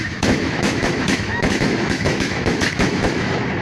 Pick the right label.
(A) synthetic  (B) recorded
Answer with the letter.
A